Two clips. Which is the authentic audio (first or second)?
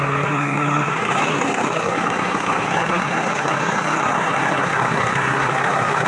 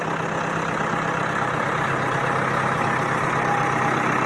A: second